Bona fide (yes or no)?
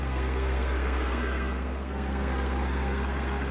no